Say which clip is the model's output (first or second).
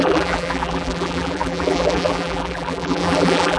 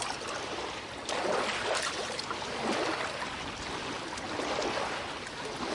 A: first